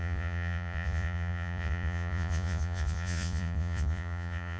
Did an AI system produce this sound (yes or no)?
yes